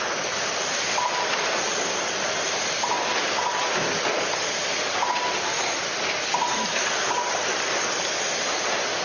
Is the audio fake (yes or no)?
no